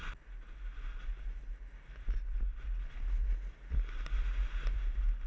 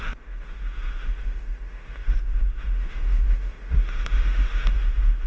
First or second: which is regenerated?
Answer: second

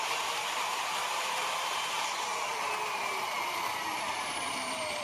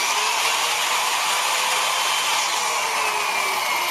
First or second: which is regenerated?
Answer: first